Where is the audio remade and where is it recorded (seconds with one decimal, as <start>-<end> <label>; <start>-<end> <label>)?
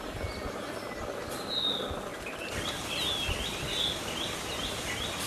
0.0-5.3 recorded